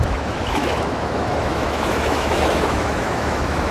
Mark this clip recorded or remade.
remade